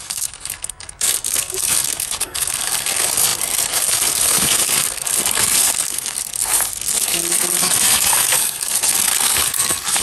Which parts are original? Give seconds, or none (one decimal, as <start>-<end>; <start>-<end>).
none